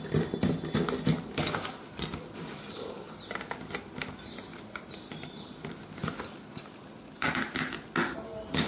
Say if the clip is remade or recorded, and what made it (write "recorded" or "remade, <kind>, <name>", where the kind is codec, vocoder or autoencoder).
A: recorded